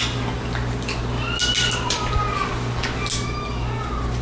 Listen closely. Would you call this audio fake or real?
real